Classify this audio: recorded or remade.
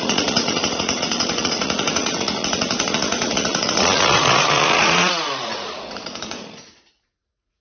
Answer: remade